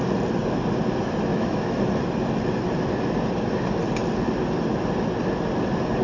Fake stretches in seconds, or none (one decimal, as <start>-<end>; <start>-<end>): 1.3-1.8